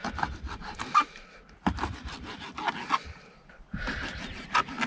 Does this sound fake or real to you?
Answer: real